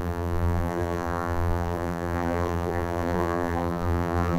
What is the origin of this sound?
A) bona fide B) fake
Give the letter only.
B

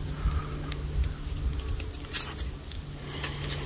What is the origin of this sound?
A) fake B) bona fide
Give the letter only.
B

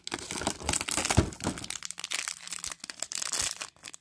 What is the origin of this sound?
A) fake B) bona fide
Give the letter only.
B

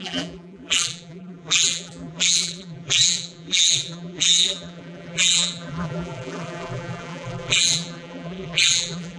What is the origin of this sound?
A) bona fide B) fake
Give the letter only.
B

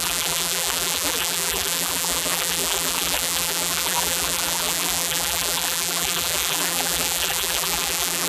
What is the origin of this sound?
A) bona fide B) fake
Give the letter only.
B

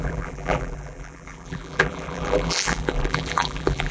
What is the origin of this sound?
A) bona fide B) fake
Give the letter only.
B